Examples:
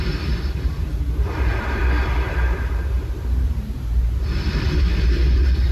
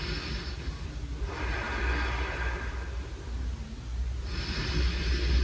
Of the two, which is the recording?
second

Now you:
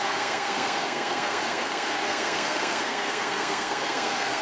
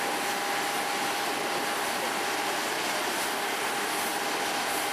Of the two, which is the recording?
second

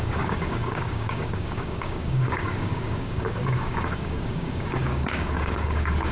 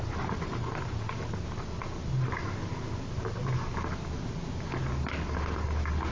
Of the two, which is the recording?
second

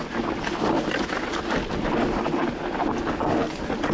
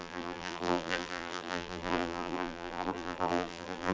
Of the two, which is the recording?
first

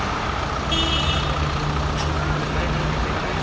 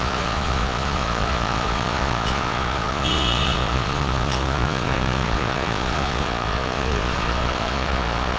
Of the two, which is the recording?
first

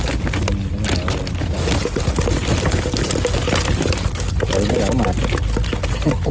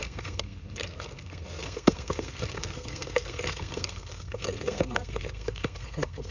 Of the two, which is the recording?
first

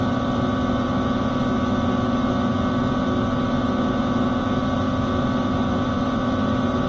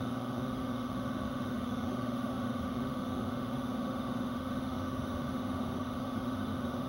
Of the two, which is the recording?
first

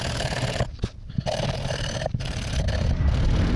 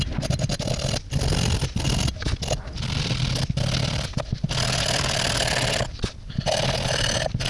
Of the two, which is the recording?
second